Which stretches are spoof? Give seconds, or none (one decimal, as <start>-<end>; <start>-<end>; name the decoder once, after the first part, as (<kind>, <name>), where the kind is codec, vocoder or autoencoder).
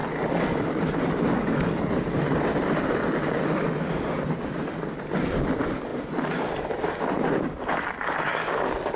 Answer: 0.6-5.9 (vocoder, BigVGAN v2); 7.0-8.3